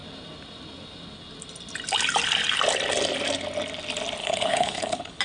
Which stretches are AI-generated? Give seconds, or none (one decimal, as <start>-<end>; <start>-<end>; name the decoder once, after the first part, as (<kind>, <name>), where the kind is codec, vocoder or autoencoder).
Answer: 4.2-5.2 (codec, HILCodec)